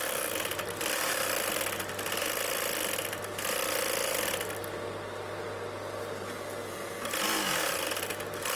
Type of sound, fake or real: real